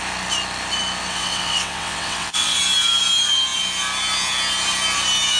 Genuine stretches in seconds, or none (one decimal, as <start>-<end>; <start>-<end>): 0.0-1.1; 2.6-5.4